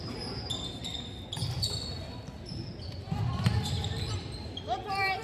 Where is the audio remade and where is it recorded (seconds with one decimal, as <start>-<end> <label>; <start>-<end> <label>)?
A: 0.0-5.2 recorded